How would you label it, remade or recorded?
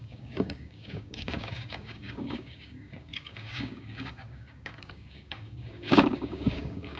remade